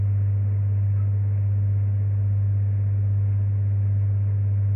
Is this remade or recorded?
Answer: recorded